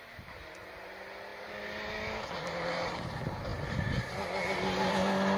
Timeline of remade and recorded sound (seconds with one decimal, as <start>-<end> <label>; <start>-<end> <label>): 0.0-5.4 recorded